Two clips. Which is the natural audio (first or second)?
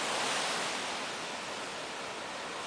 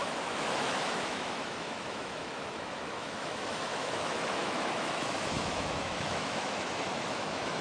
first